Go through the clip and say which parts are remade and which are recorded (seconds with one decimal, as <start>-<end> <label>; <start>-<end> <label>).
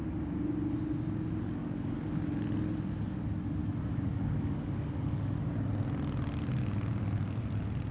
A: 0.0-1.6 recorded; 1.6-2.2 remade; 2.2-3.6 recorded; 3.6-5.5 remade; 5.5-7.9 recorded